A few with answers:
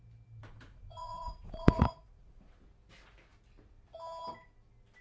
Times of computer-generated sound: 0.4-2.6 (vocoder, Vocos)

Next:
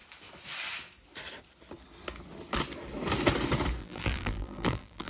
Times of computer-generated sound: 3.8-5.1 (vocoder, BigVGAN v2)

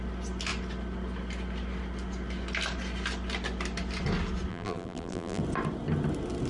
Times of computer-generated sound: 4.5-5.4 (vocoder, BigVGAN v2)

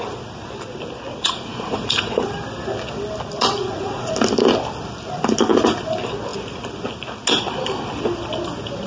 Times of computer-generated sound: 1.1-2.3 (vocoder, Vocos); 3.6-4.1

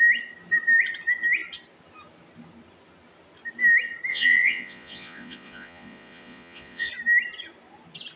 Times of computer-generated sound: 4.1-6.9 (vocoder, Vocos)

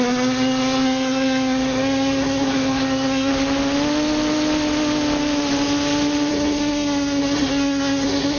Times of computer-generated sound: 0.0-3.3 (codec, SNAC); 6.3-8.4

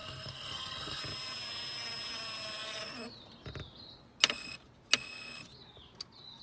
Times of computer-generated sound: 0.0-1.0 (codec, SNAC)